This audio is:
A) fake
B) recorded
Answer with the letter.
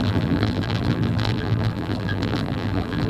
A